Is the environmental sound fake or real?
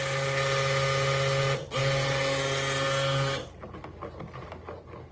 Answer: real